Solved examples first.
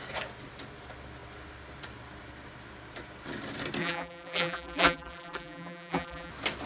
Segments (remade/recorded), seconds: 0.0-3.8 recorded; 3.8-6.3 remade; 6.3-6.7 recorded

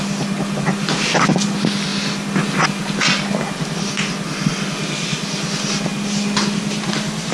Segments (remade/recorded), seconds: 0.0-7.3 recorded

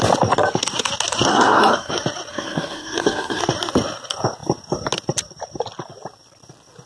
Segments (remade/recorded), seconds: 0.0-1.3 recorded; 1.3-1.9 remade; 1.9-2.3 recorded; 2.3-3.4 remade; 3.4-6.9 recorded

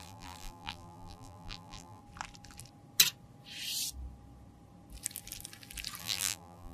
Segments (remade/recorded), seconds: 0.0-2.0 remade; 2.0-6.0 recorded; 6.0-6.7 remade